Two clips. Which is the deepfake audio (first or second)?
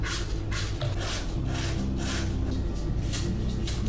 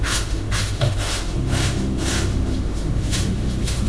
second